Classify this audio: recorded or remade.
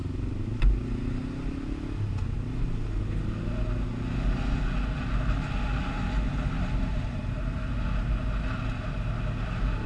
recorded